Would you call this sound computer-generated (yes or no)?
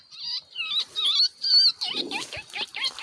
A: no